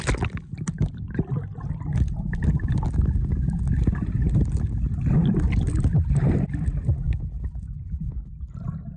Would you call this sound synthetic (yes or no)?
no